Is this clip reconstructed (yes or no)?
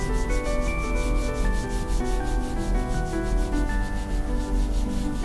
no